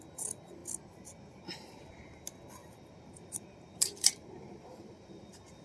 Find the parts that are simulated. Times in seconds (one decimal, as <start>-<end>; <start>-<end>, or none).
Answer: 2.6-5.6